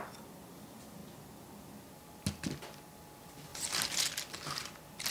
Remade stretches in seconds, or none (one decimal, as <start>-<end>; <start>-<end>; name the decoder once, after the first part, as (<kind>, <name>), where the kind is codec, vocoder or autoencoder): none